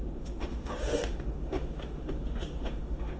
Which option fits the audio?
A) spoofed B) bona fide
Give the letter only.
A